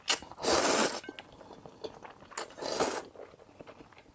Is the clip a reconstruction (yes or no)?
no